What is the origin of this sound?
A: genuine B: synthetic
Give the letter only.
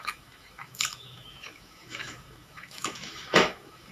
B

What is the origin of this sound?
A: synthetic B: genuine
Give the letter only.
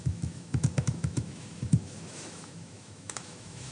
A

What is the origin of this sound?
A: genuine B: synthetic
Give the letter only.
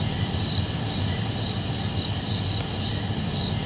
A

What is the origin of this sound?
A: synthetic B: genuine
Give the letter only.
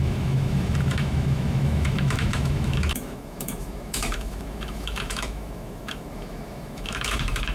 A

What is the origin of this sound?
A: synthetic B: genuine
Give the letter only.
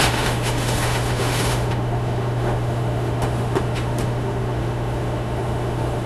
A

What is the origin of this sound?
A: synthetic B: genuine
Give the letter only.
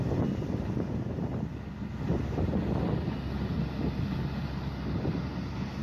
B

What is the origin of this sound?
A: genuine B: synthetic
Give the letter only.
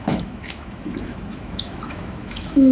B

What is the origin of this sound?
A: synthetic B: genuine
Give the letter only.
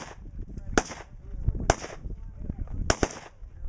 B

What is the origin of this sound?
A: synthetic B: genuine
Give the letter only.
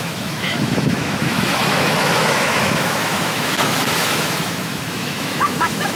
A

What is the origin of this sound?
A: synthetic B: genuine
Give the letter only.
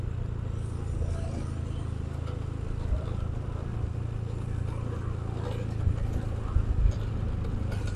B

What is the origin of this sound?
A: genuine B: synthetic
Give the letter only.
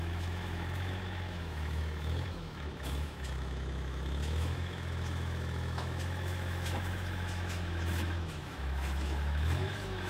B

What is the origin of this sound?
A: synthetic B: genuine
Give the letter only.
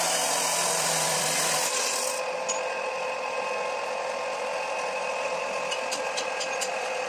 B